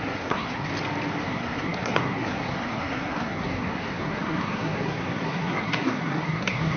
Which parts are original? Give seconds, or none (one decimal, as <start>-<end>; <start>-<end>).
0.7-1.2